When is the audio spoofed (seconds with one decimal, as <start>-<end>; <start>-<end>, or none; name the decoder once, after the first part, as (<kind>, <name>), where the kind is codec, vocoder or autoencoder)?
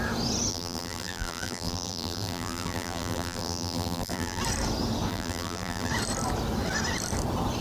0.5-4.4 (vocoder, BigVGAN v2); 5.1-5.9